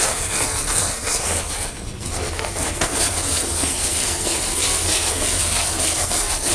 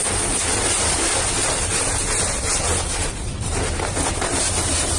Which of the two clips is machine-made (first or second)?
first